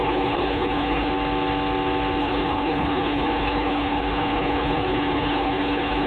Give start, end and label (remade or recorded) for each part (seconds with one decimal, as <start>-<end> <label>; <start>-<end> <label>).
0.0-1.1 remade; 1.1-2.2 recorded; 2.2-6.1 remade